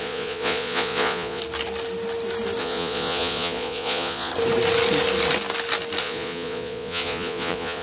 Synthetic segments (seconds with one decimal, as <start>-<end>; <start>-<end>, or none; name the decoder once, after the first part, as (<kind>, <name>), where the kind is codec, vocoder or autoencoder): 0.0-1.4 (vocoder, Vocos); 2.6-4.3; 6.0-7.8